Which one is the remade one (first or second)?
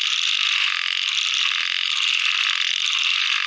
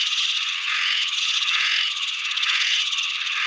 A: second